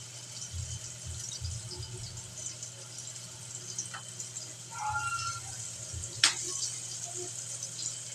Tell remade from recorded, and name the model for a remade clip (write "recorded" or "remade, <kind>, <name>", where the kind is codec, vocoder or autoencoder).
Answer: recorded